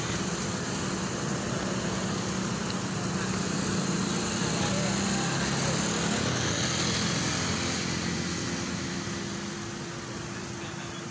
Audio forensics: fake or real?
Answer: real